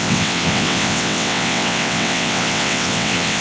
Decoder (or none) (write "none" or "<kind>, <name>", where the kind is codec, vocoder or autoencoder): vocoder, WaveNeXt